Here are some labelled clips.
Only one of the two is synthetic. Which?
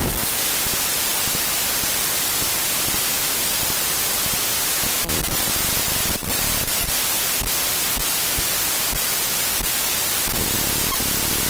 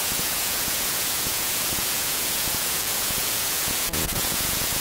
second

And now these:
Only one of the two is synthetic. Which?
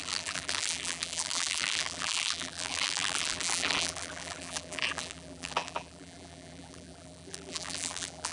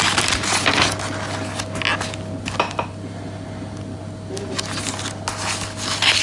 first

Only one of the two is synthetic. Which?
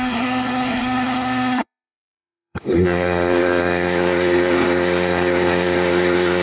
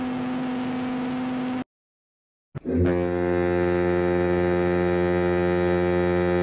first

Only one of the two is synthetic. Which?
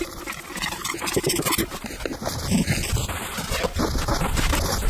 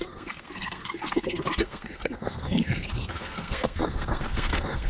second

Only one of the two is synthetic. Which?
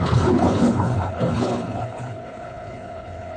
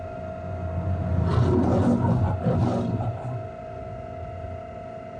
first